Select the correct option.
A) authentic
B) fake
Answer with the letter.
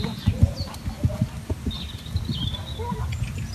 A